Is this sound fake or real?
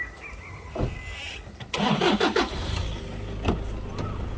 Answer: real